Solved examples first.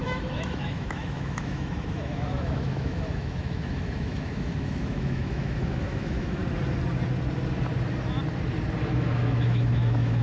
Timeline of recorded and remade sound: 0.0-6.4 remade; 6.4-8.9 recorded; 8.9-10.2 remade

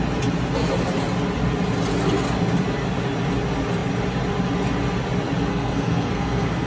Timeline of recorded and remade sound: 0.0-5.5 recorded; 5.5-6.7 remade

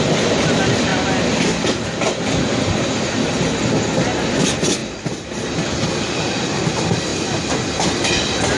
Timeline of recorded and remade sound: 0.0-8.6 recorded

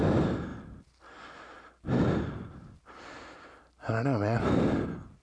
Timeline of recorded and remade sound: 0.0-5.2 recorded

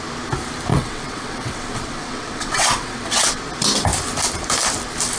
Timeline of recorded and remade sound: 0.0-0.7 recorded; 0.7-3.4 remade; 3.4-5.2 recorded

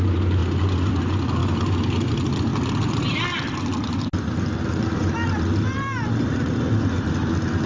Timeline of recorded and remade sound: 0.0-7.7 recorded

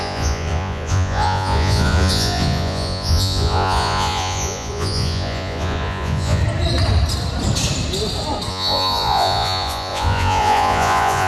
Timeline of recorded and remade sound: 0.0-6.4 remade; 6.4-8.5 recorded; 8.5-11.3 remade